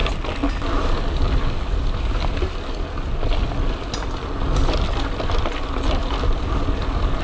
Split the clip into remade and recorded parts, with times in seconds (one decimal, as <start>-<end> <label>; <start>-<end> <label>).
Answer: 0.0-7.2 recorded

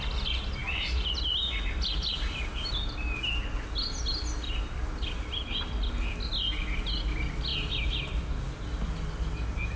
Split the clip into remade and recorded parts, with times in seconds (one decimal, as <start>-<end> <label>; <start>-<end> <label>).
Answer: 0.0-9.8 recorded

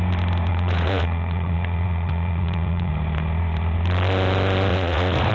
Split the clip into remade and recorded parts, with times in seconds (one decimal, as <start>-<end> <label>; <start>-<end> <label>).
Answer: 0.0-0.5 recorded; 0.5-2.9 remade; 2.9-4.7 recorded; 4.7-5.3 remade

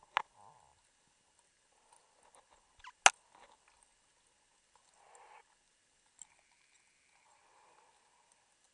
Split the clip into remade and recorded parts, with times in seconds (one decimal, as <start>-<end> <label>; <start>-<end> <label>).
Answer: 0.0-8.7 recorded